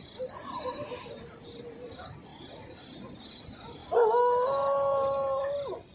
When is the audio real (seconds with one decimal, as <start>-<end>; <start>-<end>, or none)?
0.0-5.9